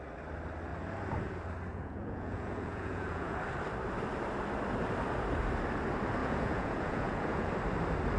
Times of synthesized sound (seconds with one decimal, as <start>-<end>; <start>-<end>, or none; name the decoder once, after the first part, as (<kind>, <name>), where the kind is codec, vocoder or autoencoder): 1.7-3.4 (vocoder, Vocos); 6.2-7.5